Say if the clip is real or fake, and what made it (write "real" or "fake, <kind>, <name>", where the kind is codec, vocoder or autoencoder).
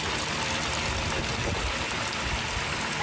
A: real